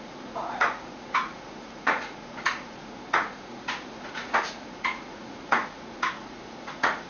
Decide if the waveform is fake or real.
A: fake